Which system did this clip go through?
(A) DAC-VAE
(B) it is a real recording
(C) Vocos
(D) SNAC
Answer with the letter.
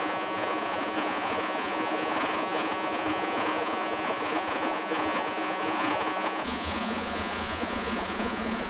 C